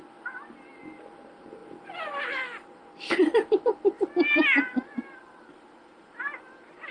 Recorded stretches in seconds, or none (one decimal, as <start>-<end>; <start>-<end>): none